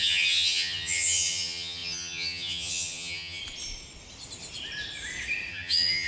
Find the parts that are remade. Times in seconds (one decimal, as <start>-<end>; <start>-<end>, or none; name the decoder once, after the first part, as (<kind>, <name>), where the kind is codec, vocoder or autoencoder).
0.0-3.4 (vocoder, HiFi-GAN); 5.5-6.1